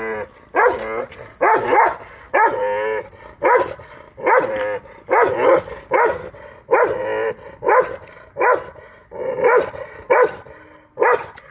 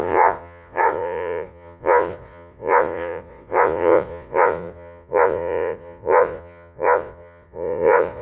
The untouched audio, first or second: first